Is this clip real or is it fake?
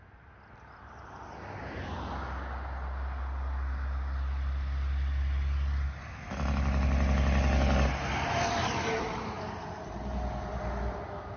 real